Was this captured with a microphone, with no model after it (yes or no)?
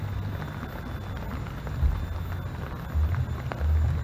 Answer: yes